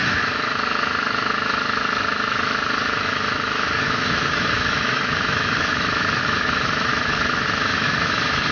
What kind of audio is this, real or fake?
fake